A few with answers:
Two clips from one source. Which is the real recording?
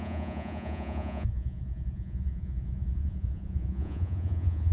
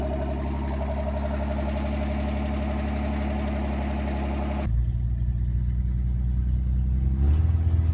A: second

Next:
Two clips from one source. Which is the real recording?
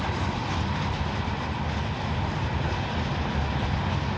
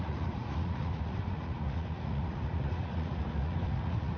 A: first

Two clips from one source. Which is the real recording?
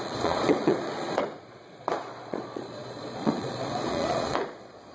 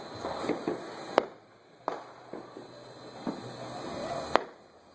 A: second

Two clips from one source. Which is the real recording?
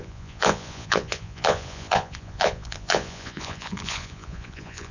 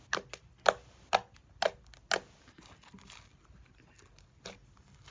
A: second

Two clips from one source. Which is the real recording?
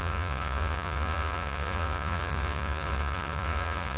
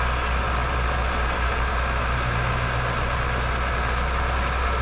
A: second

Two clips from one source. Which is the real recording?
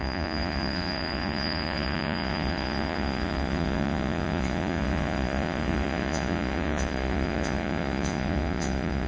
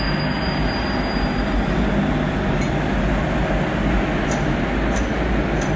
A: second